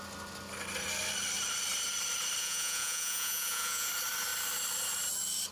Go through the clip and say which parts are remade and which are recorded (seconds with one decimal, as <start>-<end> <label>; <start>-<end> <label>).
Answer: 0.0-2.4 recorded; 2.4-3.9 remade; 3.9-5.5 recorded